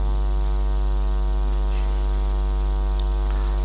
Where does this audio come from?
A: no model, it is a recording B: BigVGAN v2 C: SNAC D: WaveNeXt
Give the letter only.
A